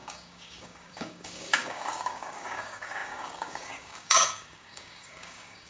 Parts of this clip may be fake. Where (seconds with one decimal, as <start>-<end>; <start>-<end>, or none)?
0.0-5.7